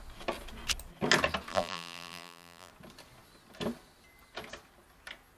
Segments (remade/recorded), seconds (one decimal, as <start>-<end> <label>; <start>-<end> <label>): 0.0-1.5 recorded; 1.5-2.7 remade; 2.7-5.4 recorded